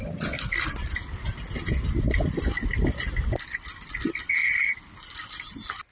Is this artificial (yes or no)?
no